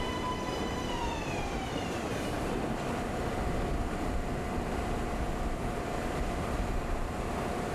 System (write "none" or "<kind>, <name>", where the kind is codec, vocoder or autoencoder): vocoder, BigVGAN v2